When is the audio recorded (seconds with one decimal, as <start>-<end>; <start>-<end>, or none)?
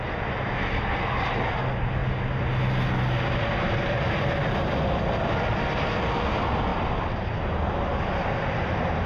0.0-9.1